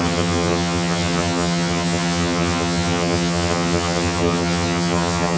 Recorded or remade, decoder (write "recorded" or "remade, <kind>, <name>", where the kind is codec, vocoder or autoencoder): remade, vocoder, HiFi-GAN